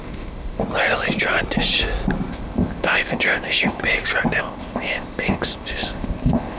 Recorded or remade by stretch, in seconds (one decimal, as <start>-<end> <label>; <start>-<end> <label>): 0.0-0.6 remade; 0.6-2.3 recorded; 2.3-3.8 remade; 3.8-4.4 recorded; 4.4-6.6 remade